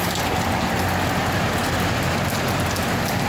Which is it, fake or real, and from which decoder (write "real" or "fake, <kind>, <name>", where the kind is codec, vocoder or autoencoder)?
real